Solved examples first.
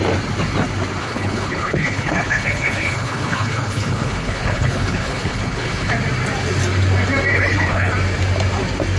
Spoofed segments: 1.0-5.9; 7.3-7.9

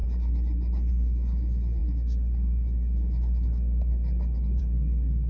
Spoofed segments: 0.0-5.3

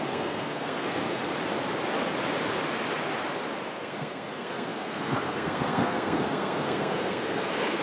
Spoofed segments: 0.0-1.2; 3.7-7.8